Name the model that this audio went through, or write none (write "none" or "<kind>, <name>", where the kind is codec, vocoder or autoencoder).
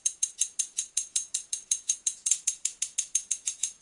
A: vocoder, Vocos